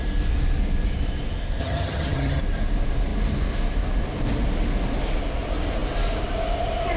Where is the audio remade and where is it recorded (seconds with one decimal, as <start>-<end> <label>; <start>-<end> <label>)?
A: 0.0-1.6 recorded; 1.6-2.4 remade; 2.4-7.0 recorded